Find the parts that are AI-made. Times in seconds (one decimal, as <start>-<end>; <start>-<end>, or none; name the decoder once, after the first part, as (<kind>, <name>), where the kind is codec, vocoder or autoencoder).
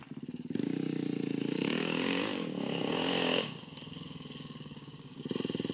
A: 1.8-5.2 (codec, DAC)